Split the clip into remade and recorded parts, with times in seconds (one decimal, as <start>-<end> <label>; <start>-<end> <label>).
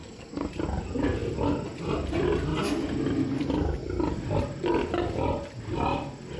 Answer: 0.0-0.5 remade; 0.5-6.4 recorded